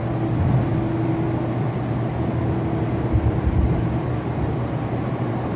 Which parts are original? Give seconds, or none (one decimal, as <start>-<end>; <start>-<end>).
0.0-5.6